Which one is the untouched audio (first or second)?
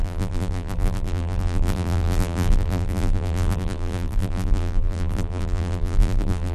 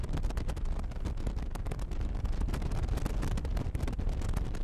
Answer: second